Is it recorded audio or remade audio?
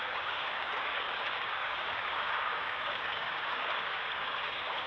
remade